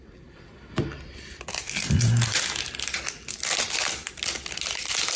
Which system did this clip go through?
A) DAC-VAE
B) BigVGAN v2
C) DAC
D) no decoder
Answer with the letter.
D